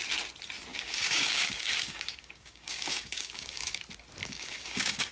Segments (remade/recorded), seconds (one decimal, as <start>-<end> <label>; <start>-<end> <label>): 0.0-0.7 recorded; 0.7-3.8 remade; 3.8-4.2 recorded; 4.2-5.1 remade